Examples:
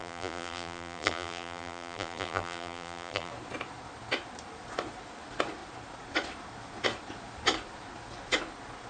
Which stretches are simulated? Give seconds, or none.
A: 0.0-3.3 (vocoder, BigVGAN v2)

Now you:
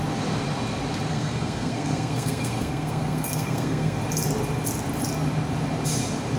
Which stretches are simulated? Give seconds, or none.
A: 1.1-4.0 (codec, SNAC)

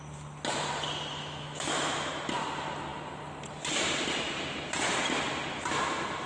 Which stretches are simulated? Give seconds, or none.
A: 1.1-2.1 (autoencoder, DAC-VAE)

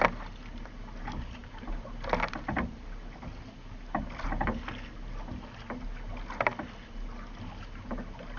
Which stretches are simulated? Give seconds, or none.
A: none

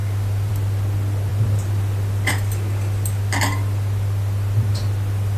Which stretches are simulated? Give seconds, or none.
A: none

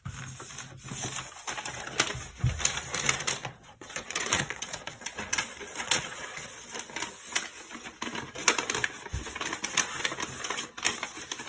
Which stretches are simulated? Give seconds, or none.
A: 3.4-6.7 (vocoder, Vocos)